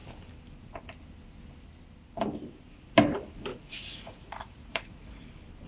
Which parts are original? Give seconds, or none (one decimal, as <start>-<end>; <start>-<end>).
0.0-3.5; 5.3-5.7